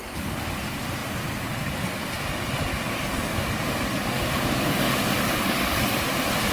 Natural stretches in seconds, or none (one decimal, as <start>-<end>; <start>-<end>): 0.0-2.7; 5.8-6.5